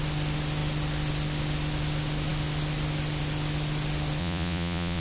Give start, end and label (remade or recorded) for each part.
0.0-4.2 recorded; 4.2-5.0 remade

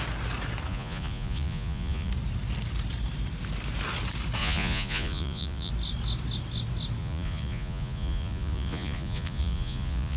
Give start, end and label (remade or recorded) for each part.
0.0-0.7 recorded; 0.7-2.1 remade; 2.1-4.4 recorded; 4.4-5.7 remade; 5.7-7.0 recorded; 7.0-10.2 remade